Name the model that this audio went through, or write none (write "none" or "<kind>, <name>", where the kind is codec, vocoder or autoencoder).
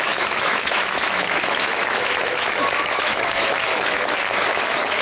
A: autoencoder, DAC-VAE